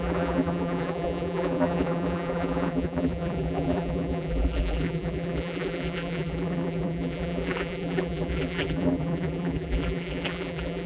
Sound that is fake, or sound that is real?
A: fake